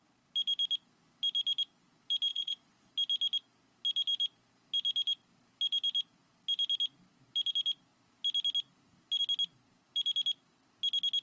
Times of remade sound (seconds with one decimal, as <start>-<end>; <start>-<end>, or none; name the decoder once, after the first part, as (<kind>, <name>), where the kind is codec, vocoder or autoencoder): 2.3-2.9 (vocoder, Vocos)